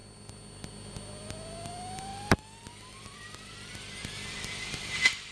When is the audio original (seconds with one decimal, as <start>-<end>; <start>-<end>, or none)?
0.0-2.1